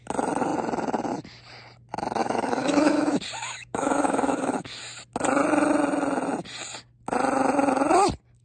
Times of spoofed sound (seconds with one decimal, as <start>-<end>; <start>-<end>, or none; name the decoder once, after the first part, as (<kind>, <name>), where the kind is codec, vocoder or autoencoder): 2.2-4.8 (codec, DAC)

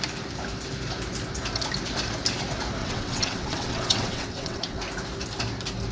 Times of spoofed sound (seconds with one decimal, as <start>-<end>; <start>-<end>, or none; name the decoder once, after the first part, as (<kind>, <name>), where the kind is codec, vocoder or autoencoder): 2.8-4.8 (vocoder, WaveNeXt)

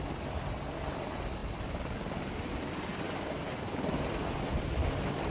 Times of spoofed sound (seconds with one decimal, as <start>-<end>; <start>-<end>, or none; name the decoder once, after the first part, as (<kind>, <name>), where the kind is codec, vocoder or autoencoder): none